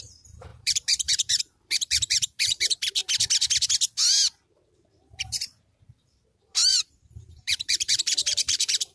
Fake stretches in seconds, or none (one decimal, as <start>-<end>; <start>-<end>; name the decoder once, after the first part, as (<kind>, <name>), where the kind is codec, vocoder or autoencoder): 0.0-3.0 (vocoder, BigVGAN v2); 4.9-8.9